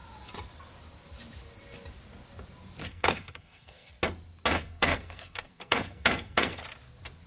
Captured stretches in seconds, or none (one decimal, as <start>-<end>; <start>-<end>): 0.0-2.8; 3.9-4.5; 6.6-7.3